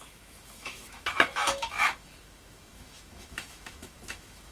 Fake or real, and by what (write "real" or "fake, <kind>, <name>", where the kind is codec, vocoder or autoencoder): fake, autoencoder, DAC-VAE